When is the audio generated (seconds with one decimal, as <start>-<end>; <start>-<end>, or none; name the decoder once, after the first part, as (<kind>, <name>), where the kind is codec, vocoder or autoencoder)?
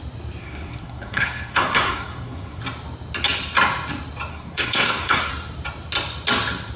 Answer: 0.4-2.6 (codec, SNAC); 4.3-5.3